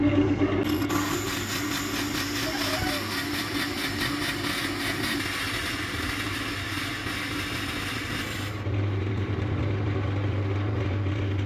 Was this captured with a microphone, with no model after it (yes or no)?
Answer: yes